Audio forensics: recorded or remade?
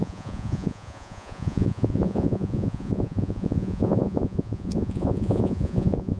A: remade